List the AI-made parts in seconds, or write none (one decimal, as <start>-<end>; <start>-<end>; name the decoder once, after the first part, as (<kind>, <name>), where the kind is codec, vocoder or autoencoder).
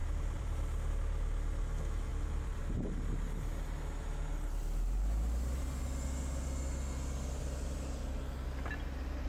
0.0-0.9 (vocoder, BigVGAN v2); 2.1-2.6